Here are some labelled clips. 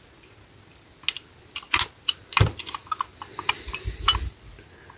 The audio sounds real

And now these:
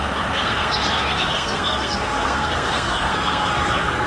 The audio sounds fake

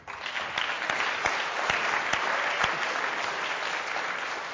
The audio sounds real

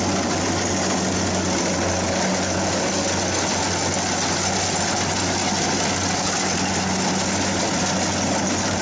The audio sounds real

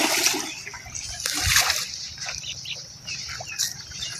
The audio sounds real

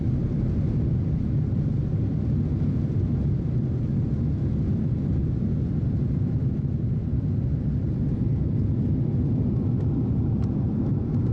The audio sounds real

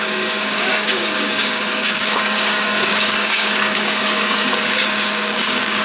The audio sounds fake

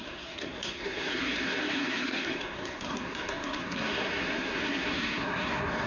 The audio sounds fake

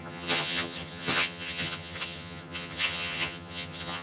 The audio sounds fake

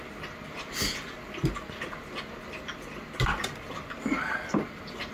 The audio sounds real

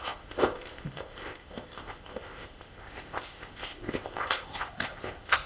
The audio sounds fake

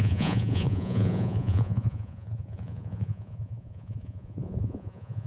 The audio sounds fake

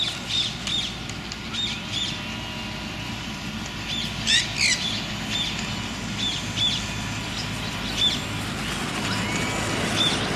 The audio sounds real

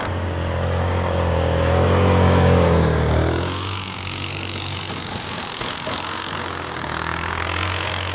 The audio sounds fake